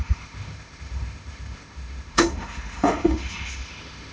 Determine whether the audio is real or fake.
fake